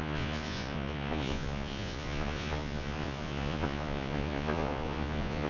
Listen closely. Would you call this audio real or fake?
fake